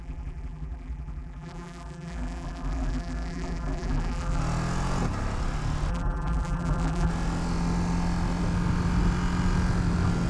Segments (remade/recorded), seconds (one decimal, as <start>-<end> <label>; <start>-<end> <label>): 0.0-4.4 remade; 4.4-5.9 recorded; 5.9-7.1 remade; 7.1-10.3 recorded